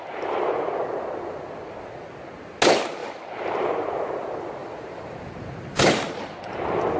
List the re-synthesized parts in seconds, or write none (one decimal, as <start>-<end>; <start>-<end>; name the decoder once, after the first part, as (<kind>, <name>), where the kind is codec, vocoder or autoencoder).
3.0-3.7 (vocoder, BigVGAN v2); 4.6-6.5